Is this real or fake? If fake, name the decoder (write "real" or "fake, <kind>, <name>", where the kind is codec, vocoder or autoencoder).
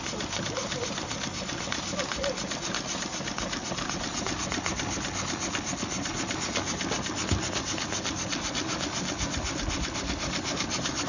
real